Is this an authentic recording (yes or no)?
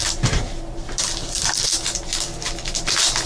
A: yes